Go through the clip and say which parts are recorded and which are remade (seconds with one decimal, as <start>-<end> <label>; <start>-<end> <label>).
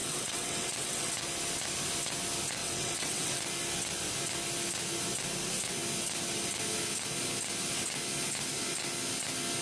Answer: 0.0-1.1 remade; 1.1-2.6 recorded; 2.6-3.4 remade; 3.4-9.6 recorded